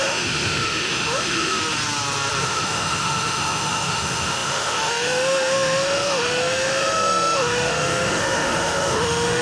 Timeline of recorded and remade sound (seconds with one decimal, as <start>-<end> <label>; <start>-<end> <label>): 0.0-1.6 remade; 1.6-2.4 recorded; 2.4-9.4 remade